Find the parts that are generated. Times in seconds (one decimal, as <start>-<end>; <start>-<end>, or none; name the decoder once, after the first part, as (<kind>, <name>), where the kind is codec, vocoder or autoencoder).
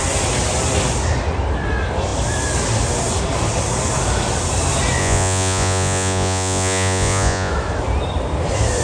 5.0-7.5 (vocoder, Vocos)